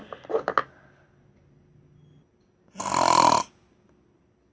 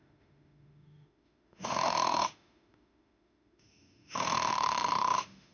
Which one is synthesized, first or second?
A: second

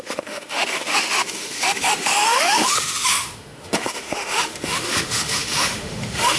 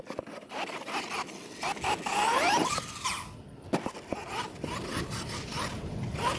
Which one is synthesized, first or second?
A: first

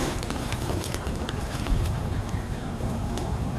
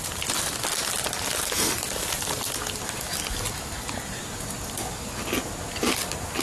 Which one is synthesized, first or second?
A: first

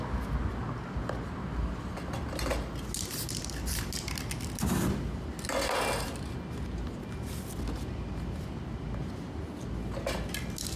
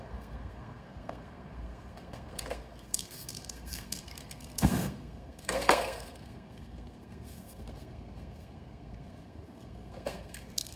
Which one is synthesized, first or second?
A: second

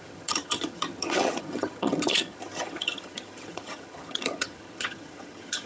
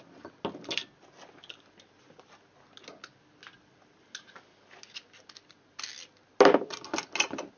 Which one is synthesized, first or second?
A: first